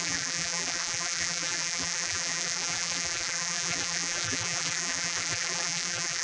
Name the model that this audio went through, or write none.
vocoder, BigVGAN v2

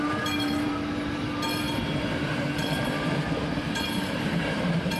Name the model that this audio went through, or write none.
vocoder, BigVGAN v2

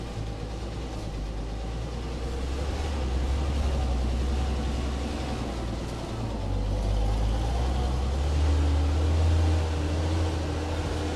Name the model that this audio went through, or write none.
none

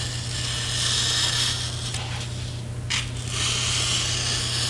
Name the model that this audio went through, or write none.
none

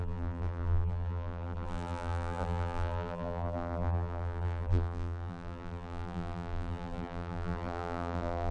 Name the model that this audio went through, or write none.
vocoder, BigVGAN v2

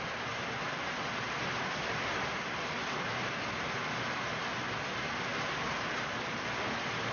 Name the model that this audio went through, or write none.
none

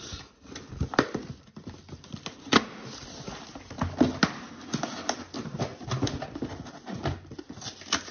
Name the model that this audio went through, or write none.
none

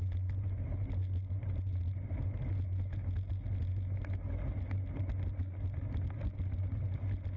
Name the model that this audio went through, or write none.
none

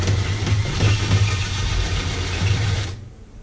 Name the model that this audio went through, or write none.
none